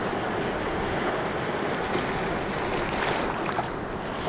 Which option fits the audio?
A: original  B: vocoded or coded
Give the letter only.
A